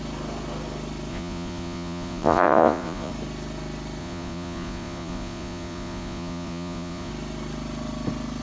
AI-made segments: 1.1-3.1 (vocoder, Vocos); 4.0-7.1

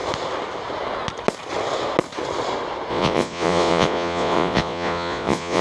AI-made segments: 2.9-5.6 (vocoder, Vocos)

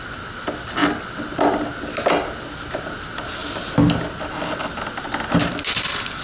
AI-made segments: none